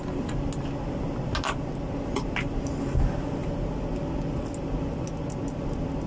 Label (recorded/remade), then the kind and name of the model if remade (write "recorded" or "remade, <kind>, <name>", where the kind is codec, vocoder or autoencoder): recorded